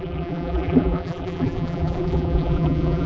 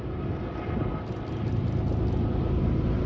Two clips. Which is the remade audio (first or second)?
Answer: first